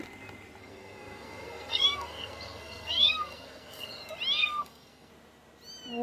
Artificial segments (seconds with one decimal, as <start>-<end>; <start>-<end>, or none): 0.6-4.0; 4.4-5.1

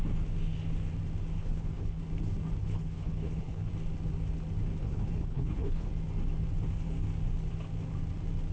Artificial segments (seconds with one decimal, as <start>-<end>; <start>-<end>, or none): 1.4-2.0; 2.6-3.7; 4.8-5.9